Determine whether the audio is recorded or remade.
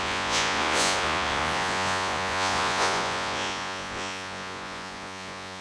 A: remade